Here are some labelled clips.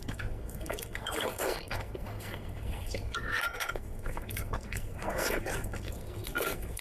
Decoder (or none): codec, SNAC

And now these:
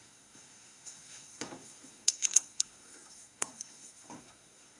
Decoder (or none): codec, SNAC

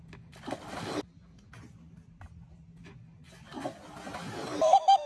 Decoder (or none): none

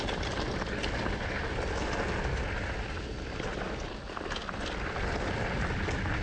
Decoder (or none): none